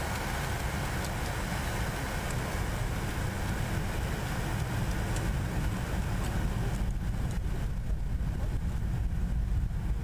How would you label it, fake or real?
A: real